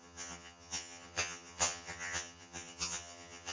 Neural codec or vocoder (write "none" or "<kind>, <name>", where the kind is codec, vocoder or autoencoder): vocoder, HiFi-GAN